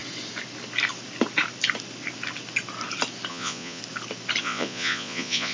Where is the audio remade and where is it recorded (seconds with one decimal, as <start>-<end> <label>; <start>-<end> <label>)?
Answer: 0.0-3.3 recorded; 3.3-3.8 remade; 3.8-4.4 recorded; 4.4-5.5 remade